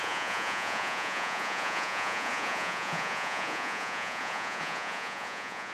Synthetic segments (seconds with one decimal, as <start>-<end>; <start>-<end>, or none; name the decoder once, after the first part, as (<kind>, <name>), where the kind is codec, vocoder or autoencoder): 0.0-5.7 (vocoder, Vocos)